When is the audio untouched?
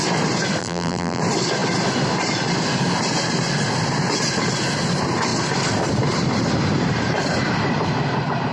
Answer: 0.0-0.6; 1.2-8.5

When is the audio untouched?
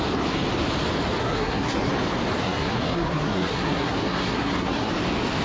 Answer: 0.0-1.2; 1.9-2.4; 4.9-5.4